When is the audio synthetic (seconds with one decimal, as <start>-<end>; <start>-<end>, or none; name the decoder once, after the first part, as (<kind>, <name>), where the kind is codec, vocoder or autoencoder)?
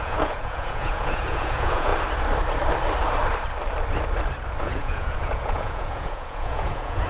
0.0-1.9 (vocoder, Vocos); 4.6-7.1